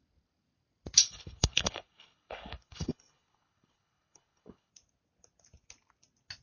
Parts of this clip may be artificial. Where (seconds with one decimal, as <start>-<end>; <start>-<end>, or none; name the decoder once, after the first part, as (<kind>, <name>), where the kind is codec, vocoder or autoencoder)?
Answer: 1.0-4.7 (codec, HILCodec)